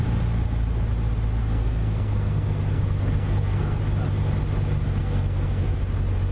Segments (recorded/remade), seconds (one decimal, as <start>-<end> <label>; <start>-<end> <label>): 0.0-1.4 recorded; 1.4-3.8 remade; 3.8-5.0 recorded; 5.0-5.8 remade; 5.8-6.3 recorded